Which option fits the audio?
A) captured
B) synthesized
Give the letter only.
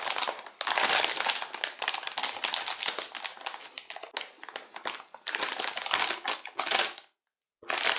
A